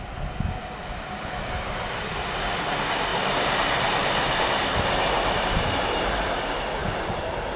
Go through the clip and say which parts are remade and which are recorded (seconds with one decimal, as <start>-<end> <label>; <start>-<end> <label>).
0.0-3.1 recorded; 3.1-5.8 remade; 5.8-7.6 recorded

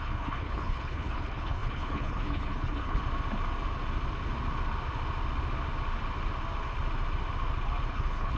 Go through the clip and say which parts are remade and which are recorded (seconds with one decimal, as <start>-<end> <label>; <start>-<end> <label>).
0.0-3.0 remade; 3.0-7.9 recorded; 7.9-8.4 remade

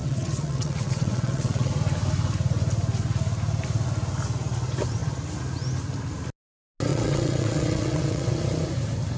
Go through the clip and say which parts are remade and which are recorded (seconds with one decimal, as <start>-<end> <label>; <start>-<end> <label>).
0.0-1.7 remade; 1.7-6.9 recorded; 6.9-8.3 remade; 8.3-9.2 recorded

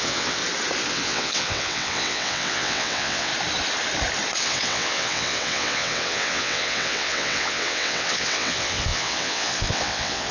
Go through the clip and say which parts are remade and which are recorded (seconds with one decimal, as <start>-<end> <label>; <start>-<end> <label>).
0.0-0.4 remade; 0.4-0.9 recorded; 0.9-3.3 remade; 3.3-4.4 recorded; 4.4-10.3 remade

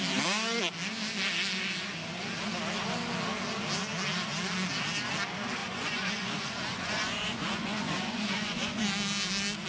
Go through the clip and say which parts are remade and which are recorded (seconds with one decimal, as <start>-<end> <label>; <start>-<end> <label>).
0.0-5.6 recorded; 5.6-8.8 remade; 8.8-9.7 recorded

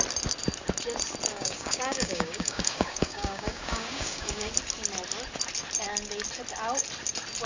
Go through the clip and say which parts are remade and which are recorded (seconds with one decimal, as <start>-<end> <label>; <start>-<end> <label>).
0.0-1.3 recorded; 1.3-4.5 remade; 4.5-7.5 recorded